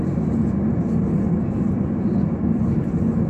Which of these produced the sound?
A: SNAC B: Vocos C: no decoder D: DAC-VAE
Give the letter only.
C